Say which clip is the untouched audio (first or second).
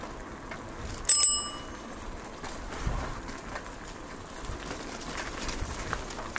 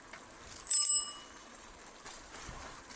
first